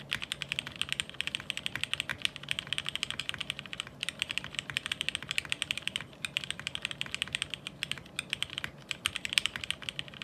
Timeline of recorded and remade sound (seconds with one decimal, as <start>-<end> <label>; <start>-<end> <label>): 0.0-10.2 recorded